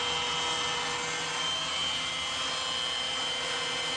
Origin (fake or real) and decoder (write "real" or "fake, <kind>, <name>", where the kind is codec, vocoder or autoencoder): real